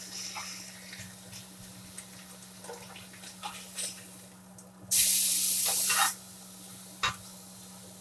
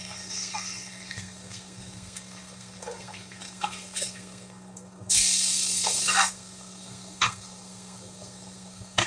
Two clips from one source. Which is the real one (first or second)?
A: first